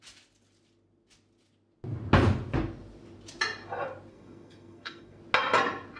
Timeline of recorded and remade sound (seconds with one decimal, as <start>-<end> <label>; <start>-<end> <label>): 0.0-4.1 recorded; 4.1-5.2 remade; 5.2-6.0 recorded